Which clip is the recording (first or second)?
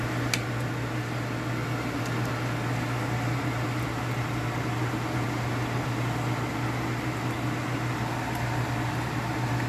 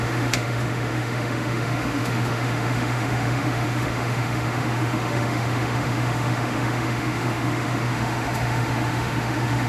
first